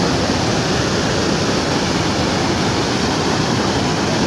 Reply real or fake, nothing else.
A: real